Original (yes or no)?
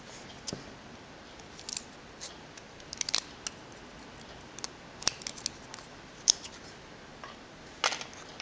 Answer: yes